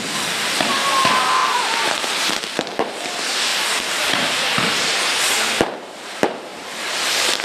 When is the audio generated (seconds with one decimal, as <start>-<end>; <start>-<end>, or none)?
1.4-2.9; 3.5-5.0; 6.5-7.4